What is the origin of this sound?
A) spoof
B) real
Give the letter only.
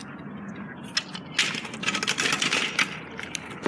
B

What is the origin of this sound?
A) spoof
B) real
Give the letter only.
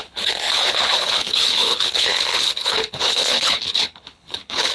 A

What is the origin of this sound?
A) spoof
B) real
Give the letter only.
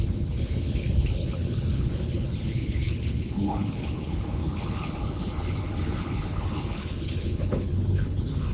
A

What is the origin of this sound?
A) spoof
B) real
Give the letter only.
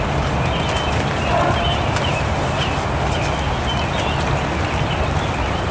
B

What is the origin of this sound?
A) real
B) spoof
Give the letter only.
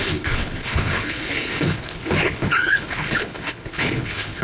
B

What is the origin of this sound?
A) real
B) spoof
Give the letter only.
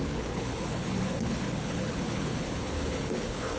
B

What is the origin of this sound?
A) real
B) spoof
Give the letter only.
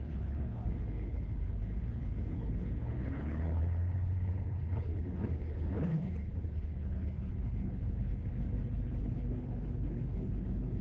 B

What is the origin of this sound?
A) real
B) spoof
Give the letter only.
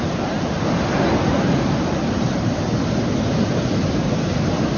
A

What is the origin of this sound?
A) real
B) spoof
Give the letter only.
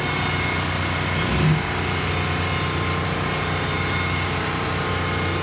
A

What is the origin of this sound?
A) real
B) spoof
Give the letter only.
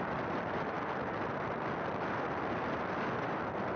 A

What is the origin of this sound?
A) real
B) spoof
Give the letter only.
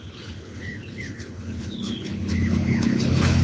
B